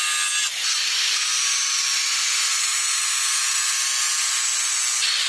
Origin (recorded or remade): recorded